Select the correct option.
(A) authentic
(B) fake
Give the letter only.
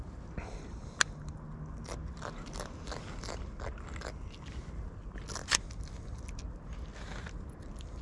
A